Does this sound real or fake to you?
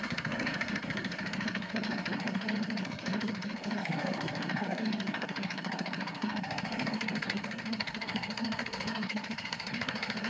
fake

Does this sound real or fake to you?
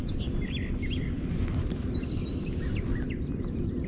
real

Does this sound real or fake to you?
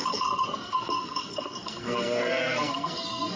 fake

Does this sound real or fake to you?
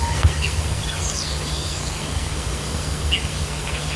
fake